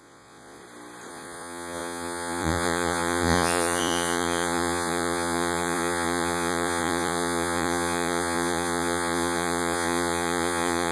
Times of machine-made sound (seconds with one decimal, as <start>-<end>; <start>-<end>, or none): 0.0-0.6; 1.1-10.9